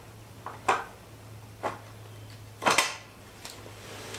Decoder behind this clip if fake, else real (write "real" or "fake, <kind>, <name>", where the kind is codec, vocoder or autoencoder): fake, vocoder, BigVGAN v2